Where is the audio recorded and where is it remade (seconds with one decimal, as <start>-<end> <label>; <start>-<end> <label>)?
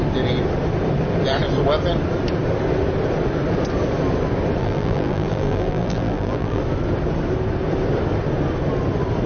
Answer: 0.0-4.6 recorded; 4.6-6.6 remade; 6.6-9.3 recorded